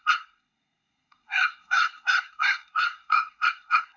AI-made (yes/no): yes